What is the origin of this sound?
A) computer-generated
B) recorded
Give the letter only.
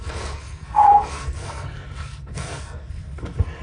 A